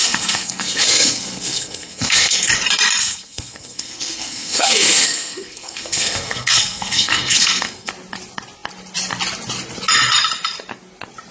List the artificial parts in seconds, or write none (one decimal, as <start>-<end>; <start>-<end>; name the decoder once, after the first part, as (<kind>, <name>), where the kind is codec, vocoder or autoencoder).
0.0-2.5 (codec, SNAC); 3.0-7.9